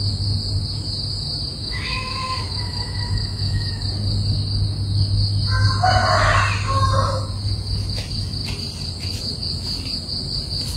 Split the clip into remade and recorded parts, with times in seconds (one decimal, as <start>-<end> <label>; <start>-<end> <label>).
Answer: 0.0-1.6 recorded; 1.6-3.7 remade; 3.7-10.8 recorded